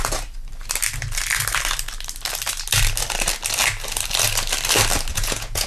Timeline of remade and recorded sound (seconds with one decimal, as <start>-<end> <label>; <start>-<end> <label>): 0.0-5.1 recorded; 5.1-5.7 remade